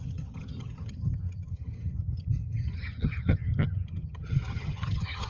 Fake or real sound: fake